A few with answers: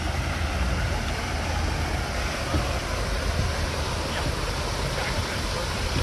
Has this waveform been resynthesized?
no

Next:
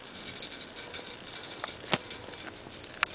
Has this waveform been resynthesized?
no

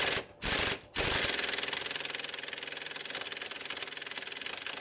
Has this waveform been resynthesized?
no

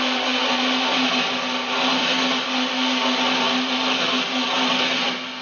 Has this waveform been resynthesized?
no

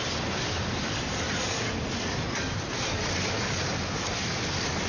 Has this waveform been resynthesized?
no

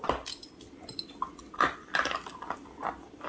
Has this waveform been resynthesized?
no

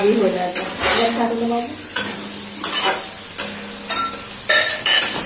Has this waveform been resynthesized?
no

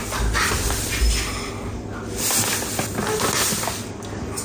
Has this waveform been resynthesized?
no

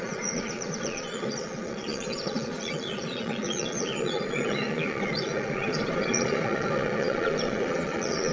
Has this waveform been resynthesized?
yes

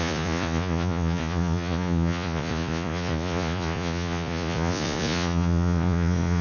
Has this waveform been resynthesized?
yes